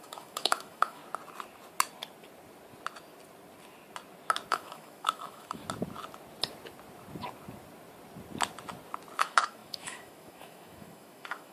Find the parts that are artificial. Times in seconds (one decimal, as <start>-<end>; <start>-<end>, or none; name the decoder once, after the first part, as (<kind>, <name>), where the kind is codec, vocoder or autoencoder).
0.0-1.0 (autoencoder, DAC-VAE); 4.5-5.6; 9.2-11.5

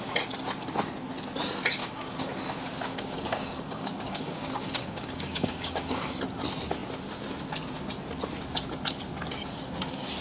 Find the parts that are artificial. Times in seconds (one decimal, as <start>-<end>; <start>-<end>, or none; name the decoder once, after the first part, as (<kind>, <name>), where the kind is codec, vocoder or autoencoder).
1.8-2.3 (codec, DAC); 2.9-6.1

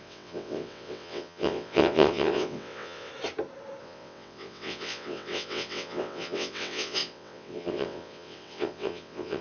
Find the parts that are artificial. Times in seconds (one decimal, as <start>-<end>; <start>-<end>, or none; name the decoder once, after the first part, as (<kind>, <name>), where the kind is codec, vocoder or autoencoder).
0.0-3.1 (vocoder, WaveNeXt); 3.8-9.4

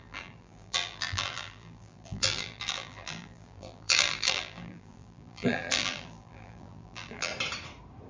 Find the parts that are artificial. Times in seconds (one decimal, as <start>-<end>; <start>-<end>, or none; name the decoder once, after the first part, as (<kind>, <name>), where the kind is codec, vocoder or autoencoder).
0.0-7.3 (vocoder, BigVGAN v2)

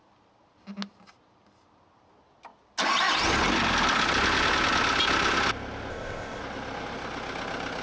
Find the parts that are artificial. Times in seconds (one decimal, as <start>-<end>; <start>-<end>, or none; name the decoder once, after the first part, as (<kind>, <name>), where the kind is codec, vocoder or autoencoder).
5.9-6.4 (codec, ZipCodec)

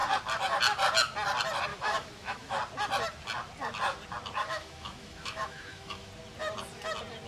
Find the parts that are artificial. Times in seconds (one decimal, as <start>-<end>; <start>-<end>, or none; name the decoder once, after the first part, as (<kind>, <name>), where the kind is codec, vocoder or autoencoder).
1.7-2.6 (autoencoder, DAC-VAE); 4.4-6.1

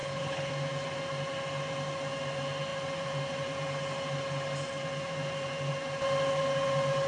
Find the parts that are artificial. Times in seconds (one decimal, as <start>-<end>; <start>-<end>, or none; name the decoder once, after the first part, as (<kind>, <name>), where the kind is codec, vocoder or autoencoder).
0.0-0.5 (codec, HILCodec)

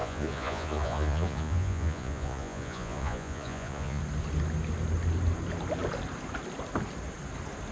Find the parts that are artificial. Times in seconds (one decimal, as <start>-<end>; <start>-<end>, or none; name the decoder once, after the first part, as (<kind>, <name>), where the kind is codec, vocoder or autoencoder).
0.0-4.0 (vocoder, Vocos)